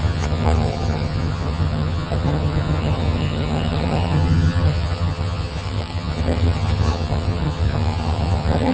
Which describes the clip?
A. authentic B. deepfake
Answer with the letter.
B